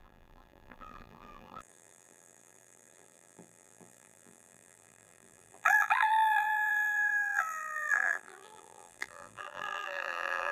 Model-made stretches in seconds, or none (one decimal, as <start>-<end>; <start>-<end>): 0.0-10.5